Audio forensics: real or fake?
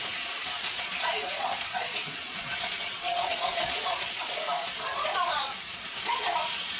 fake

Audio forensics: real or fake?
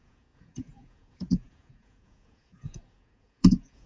fake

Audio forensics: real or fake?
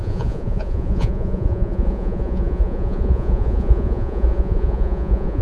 fake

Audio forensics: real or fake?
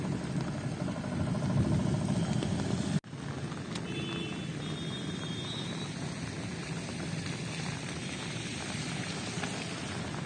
real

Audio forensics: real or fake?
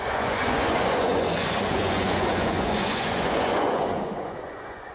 fake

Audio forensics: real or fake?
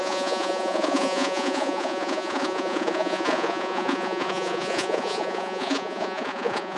fake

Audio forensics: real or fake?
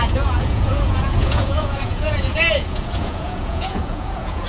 fake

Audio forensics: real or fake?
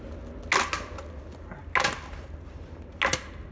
real